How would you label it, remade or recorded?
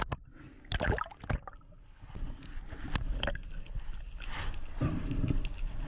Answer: recorded